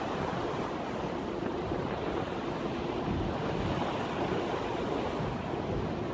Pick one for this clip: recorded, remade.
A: recorded